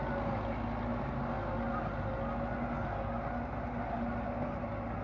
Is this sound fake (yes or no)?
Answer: no